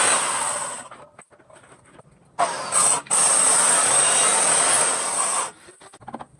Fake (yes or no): no